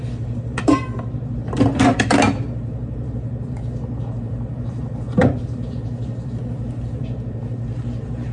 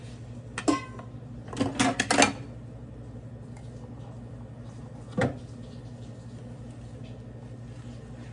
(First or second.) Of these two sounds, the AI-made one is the first